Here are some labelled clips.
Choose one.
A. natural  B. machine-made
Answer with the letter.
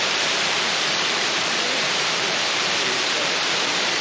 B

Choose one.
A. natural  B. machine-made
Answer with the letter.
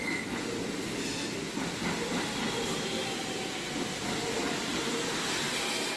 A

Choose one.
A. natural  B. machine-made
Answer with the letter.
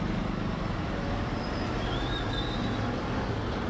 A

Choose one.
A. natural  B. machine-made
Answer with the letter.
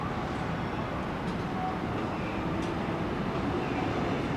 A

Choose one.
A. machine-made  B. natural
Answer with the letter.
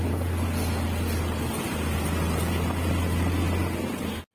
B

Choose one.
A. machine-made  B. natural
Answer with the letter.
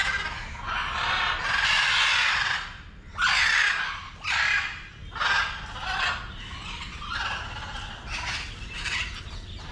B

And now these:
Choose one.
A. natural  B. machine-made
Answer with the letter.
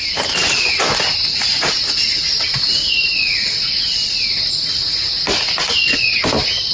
A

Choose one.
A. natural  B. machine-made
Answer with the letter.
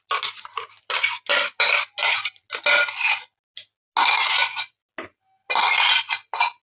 A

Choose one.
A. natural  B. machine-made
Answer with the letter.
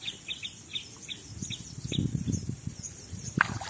A